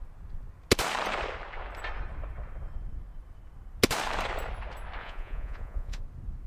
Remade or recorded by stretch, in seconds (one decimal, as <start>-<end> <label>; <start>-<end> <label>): 0.0-5.0 recorded; 5.0-6.0 remade; 6.0-6.5 recorded